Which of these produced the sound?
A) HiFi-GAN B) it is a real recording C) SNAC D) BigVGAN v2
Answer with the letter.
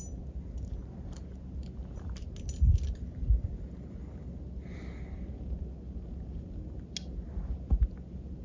B